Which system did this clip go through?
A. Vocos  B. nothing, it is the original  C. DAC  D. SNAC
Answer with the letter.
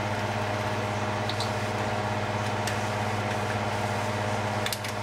B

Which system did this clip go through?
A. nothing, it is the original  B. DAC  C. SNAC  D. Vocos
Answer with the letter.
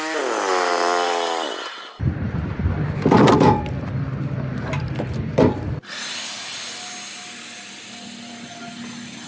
A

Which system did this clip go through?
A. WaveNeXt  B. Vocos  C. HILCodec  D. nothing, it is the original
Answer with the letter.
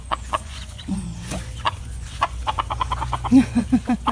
B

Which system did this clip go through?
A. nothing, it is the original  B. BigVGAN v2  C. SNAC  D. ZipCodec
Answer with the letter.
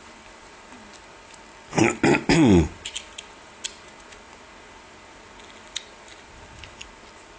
A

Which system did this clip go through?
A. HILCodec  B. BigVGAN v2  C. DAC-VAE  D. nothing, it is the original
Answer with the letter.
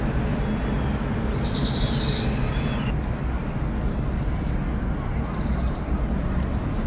D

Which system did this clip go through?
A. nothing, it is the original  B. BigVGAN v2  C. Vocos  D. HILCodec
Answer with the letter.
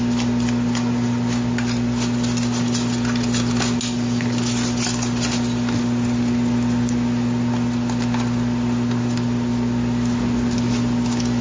A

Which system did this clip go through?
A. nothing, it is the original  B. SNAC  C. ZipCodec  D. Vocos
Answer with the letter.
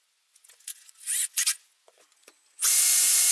D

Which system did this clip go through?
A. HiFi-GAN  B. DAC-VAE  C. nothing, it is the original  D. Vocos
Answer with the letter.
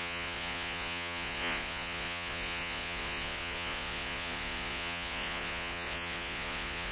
D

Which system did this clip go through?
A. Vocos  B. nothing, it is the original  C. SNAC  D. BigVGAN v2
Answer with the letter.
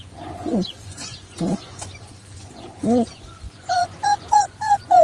A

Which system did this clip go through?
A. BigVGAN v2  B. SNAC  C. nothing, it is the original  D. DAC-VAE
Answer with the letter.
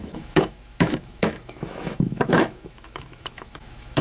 D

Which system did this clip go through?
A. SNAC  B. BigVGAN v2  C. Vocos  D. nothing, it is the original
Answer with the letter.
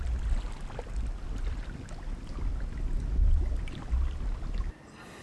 D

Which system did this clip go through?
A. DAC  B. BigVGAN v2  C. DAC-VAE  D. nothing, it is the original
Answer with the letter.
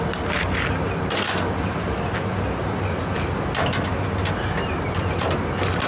D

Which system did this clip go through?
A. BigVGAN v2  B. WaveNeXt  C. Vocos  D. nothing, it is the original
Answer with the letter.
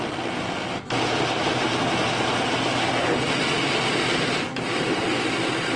D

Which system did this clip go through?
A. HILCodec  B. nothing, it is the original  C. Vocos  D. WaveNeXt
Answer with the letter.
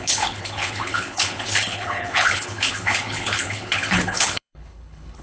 A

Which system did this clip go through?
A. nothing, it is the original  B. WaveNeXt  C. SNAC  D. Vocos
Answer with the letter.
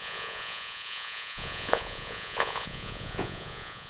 D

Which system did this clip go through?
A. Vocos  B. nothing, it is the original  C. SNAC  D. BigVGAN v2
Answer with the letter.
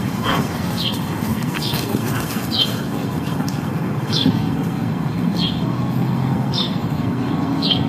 C